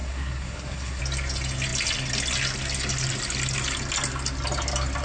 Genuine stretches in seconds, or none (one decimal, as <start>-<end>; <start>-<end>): 1.0-5.0